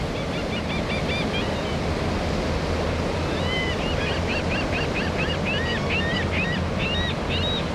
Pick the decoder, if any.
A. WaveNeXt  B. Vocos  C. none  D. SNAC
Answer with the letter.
C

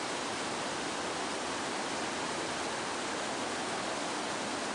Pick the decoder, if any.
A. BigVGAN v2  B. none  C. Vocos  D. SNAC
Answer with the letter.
B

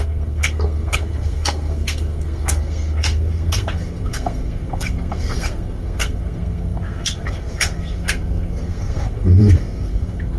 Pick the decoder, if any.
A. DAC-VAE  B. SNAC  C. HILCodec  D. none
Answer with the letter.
B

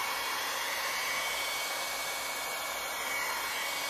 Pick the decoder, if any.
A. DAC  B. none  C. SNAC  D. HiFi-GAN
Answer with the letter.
B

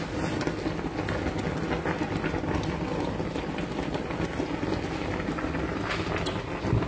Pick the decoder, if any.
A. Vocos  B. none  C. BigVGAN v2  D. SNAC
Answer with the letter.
B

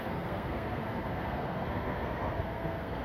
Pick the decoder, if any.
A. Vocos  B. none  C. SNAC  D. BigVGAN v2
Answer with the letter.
C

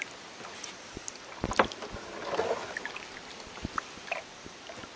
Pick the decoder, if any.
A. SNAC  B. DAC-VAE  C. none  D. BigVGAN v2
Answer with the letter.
C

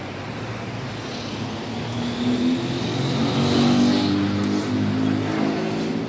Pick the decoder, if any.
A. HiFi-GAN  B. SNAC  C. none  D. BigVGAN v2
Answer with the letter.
C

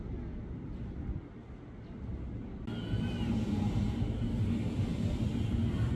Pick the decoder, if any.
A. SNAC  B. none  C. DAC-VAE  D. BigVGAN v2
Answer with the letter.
B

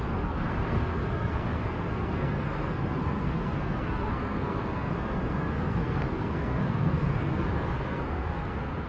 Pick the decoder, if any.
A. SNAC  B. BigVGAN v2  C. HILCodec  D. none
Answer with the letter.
A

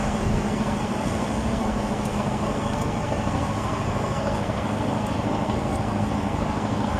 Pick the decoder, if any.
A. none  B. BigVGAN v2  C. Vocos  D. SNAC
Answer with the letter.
D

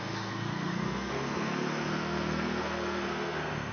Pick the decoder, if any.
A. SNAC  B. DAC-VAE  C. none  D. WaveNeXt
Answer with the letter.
A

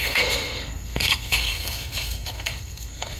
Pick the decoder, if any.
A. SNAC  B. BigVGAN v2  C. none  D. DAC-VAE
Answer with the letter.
A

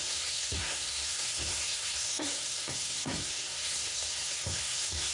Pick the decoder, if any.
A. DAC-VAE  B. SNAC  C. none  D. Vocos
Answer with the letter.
B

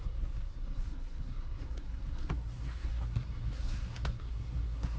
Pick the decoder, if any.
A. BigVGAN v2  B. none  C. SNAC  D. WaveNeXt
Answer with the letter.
C